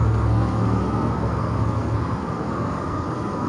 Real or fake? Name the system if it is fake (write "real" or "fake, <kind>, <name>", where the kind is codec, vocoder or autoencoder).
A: fake, codec, SNAC